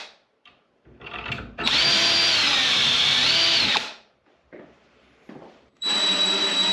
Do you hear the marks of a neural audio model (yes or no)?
yes